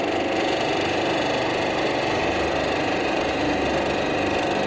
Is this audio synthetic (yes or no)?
no